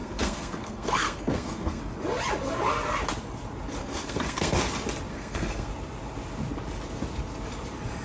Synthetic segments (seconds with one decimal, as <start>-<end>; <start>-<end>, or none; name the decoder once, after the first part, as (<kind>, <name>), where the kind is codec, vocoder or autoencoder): 0.0-1.8 (codec, SNAC); 3.8-4.6; 5.1-5.7